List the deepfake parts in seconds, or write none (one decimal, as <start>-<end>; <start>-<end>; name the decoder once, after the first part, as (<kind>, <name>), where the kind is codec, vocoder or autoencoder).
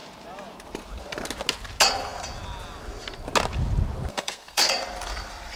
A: 4.1-4.7 (codec, SNAC)